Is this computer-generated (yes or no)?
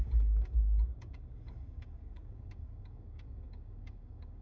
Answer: yes